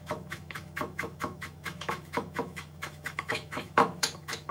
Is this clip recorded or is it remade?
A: remade